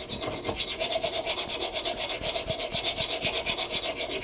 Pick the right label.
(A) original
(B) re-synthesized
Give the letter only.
A